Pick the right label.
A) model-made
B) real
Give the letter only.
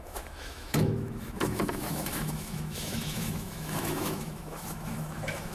A